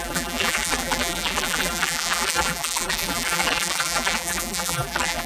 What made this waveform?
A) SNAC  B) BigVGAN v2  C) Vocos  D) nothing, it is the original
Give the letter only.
B